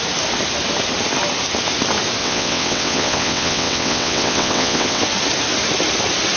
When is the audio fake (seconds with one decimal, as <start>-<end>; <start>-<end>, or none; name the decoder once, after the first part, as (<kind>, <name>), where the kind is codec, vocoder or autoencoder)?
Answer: 2.2-5.0 (vocoder, WaveNeXt)